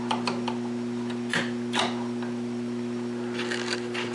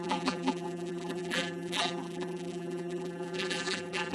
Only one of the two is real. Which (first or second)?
first